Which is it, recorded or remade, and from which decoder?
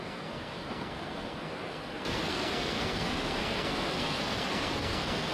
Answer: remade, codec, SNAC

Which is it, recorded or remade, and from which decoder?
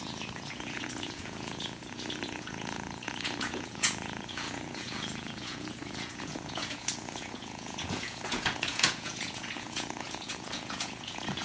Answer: remade, vocoder, Vocos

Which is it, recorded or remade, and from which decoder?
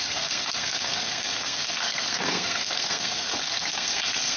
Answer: remade, codec, SNAC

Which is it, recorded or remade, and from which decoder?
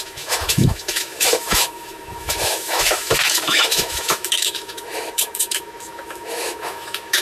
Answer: remade, autoencoder, DAC-VAE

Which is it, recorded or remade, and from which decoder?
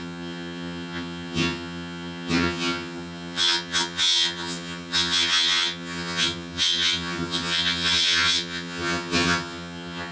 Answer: remade, vocoder, HiFi-GAN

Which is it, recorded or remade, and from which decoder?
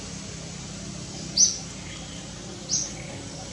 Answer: recorded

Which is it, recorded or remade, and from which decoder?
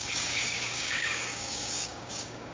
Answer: remade, codec, DAC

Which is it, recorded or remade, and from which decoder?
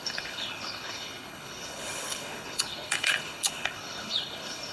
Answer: remade, codec, HILCodec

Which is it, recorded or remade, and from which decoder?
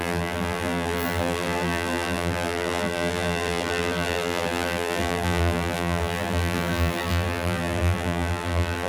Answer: remade, vocoder, BigVGAN v2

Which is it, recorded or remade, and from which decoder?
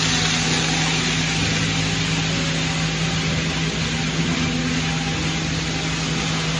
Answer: recorded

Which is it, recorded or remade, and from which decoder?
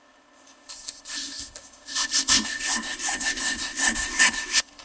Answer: remade, codec, ZipCodec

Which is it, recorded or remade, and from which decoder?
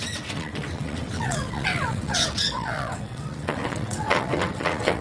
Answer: remade, vocoder, WaveNeXt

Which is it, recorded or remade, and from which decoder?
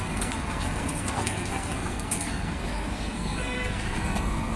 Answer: remade, codec, SNAC